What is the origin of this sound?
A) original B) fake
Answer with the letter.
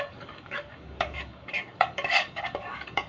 B